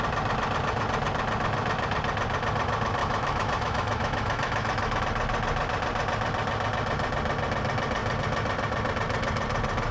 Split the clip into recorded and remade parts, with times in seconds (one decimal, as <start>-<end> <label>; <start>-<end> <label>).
0.0-3.0 recorded; 3.0-5.0 remade; 5.0-9.9 recorded